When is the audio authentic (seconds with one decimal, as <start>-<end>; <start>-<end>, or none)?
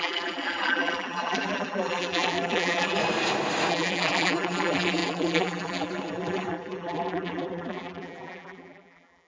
3.0-3.7